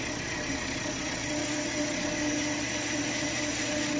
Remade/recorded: recorded